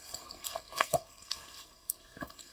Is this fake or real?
fake